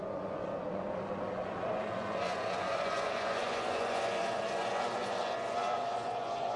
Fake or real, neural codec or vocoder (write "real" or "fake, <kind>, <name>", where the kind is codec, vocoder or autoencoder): fake, vocoder, Vocos